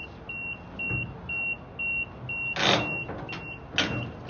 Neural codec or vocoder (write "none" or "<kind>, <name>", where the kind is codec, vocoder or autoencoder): none